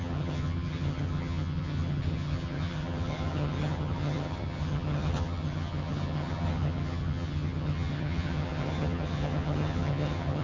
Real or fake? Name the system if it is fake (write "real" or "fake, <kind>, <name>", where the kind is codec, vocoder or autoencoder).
fake, vocoder, HiFi-GAN